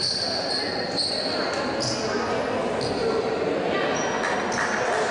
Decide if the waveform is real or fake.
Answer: real